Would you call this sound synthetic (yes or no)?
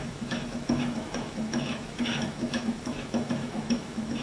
yes